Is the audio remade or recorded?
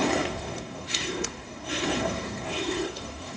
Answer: remade